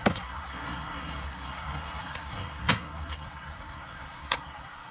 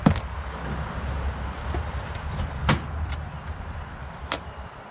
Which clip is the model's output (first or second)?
first